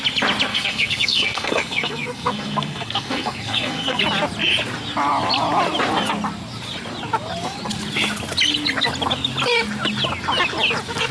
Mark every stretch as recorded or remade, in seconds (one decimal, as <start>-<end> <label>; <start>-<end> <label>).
0.0-0.5 recorded; 0.5-4.0 remade; 4.0-11.1 recorded